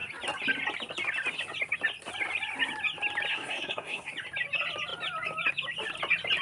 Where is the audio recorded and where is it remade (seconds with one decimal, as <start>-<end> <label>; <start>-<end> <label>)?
0.0-3.3 recorded; 3.3-4.1 remade; 4.1-6.4 recorded